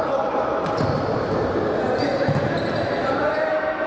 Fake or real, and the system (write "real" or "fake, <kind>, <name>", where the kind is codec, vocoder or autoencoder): real